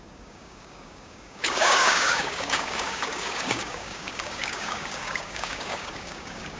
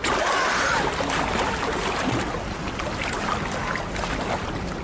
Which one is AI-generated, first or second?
first